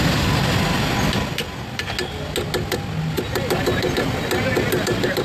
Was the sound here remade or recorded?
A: recorded